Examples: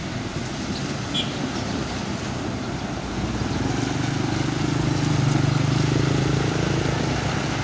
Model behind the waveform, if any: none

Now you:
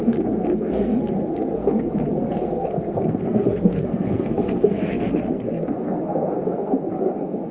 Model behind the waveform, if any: codec, SNAC